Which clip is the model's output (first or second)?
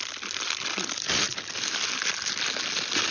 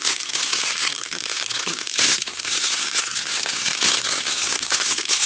second